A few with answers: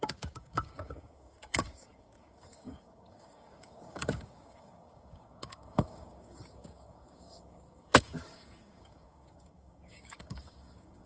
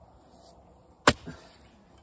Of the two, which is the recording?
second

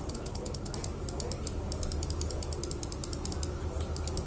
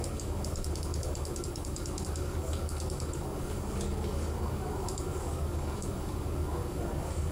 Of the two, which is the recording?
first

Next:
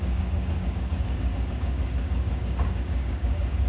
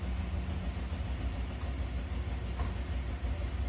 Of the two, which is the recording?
second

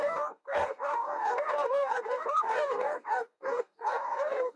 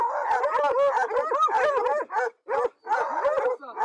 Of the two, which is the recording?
second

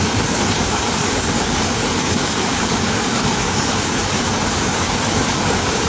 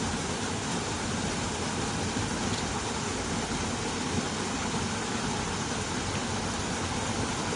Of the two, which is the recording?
second